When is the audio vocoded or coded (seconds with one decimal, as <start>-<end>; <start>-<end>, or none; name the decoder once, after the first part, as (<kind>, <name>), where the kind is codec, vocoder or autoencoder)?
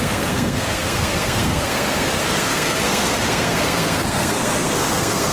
0.0-5.3 (codec, SNAC)